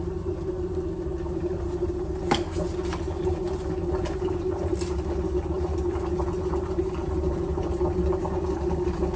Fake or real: real